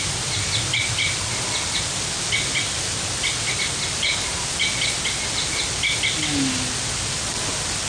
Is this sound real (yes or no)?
yes